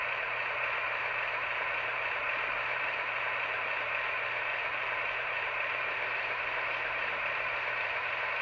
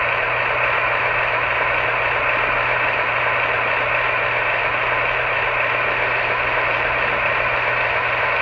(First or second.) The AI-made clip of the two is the first